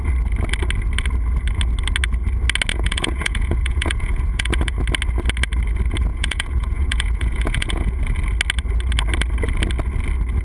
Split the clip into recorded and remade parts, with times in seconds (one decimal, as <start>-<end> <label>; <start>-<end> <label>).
0.0-2.7 recorded; 2.7-4.8 remade; 4.8-6.1 recorded; 6.1-8.0 remade; 8.0-10.4 recorded